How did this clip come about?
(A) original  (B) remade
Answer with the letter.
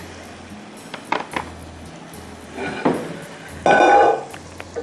A